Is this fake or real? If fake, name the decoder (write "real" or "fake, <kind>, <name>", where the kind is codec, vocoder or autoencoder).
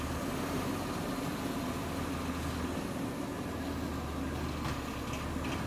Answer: real